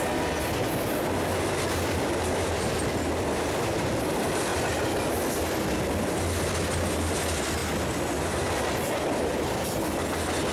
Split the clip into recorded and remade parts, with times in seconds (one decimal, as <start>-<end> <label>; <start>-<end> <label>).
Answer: 0.0-10.5 recorded

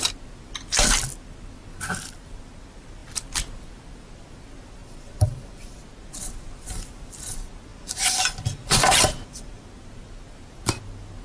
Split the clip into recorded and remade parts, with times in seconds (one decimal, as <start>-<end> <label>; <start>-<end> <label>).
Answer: 0.0-4.8 recorded; 4.8-5.8 remade; 5.8-7.7 recorded; 7.7-9.6 remade; 9.6-11.2 recorded

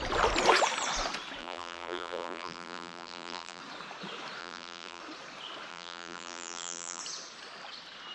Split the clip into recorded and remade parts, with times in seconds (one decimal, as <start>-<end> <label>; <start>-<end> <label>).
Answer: 0.0-1.4 recorded; 1.4-3.6 remade; 3.6-4.4 recorded; 4.4-5.0 remade; 5.0-5.7 recorded; 5.7-7.0 remade; 7.0-8.1 recorded

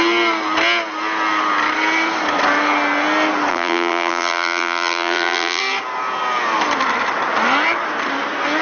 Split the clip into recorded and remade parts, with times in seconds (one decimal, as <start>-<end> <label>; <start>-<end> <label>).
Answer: 0.0-3.5 recorded; 3.5-5.6 remade; 5.6-8.6 recorded

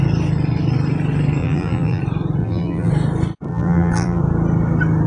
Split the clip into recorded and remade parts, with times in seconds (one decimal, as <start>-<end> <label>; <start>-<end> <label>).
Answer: 0.0-1.4 recorded; 1.4-2.0 remade; 2.0-2.4 recorded; 2.4-2.9 remade; 2.9-3.5 recorded; 3.5-4.2 remade; 4.2-5.1 recorded

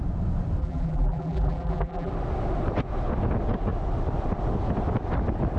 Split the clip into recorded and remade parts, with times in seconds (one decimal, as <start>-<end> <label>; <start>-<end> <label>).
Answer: 0.0-0.6 recorded; 0.6-2.1 remade; 2.1-5.6 recorded

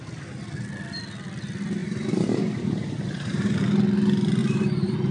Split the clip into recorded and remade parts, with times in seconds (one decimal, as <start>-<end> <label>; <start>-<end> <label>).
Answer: 0.0-1.8 recorded; 1.8-3.6 remade; 3.6-4.4 recorded; 4.4-5.1 remade

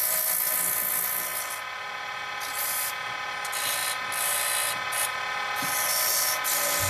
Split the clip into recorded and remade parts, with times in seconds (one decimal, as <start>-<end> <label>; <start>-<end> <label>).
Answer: 0.0-6.9 recorded